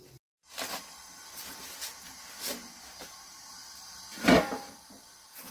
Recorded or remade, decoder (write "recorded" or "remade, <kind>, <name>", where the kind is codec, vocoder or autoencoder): recorded